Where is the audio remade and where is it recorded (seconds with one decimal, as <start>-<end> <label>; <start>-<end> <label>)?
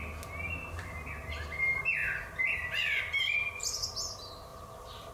0.0-4.5 recorded; 4.5-5.1 remade